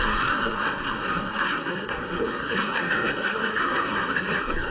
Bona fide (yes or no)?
no